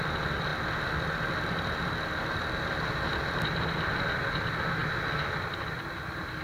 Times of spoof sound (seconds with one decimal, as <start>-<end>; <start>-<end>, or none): none